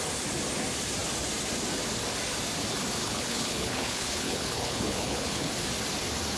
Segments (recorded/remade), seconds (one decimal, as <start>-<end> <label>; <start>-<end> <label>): 0.0-3.0 recorded; 3.0-5.5 remade; 5.5-6.4 recorded